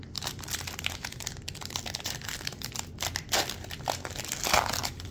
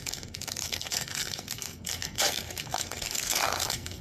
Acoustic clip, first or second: first